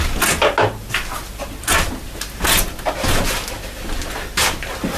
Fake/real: real